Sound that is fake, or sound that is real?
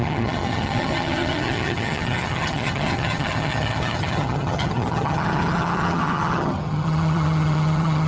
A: fake